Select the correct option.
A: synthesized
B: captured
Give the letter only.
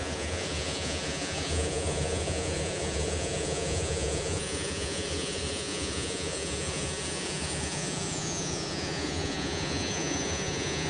A